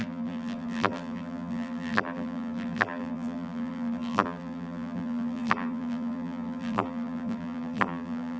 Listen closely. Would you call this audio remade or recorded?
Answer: remade